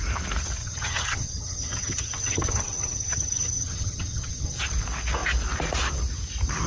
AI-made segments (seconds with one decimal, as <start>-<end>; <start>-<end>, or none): 0.6-4.6